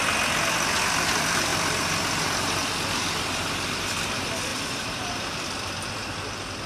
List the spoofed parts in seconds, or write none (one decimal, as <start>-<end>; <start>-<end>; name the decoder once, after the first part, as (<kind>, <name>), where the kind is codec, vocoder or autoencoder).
0.9-6.7 (vocoder, BigVGAN v2)